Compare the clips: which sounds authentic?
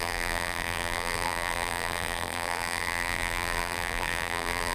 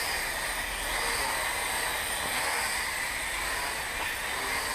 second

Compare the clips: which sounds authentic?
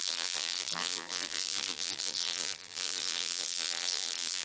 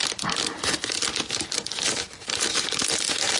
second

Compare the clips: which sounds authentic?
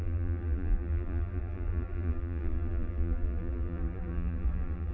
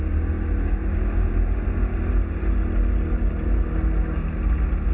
second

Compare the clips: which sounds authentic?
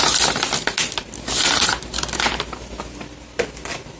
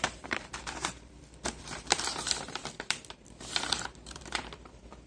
first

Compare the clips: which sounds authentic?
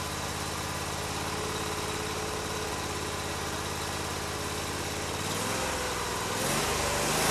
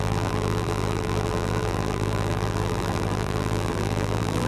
first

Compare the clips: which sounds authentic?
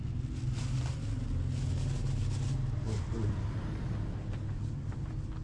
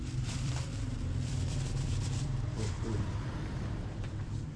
first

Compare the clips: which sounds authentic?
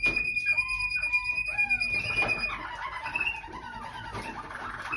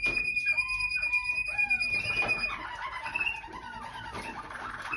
first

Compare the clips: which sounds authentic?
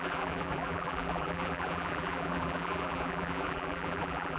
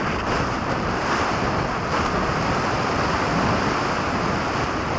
second